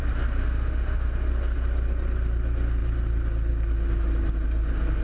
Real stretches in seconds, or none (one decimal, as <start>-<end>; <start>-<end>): 0.0-0.4; 1.3-5.0